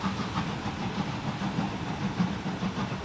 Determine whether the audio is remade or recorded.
recorded